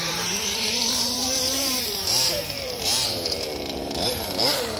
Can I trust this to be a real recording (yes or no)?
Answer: no